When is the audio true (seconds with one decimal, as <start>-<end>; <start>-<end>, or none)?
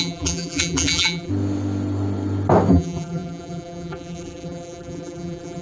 1.3-2.7